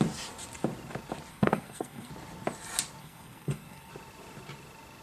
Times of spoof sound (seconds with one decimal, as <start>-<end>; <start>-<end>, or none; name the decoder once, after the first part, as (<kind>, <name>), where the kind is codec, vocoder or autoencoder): 1.3-2.1 (codec, SNAC); 3.0-3.9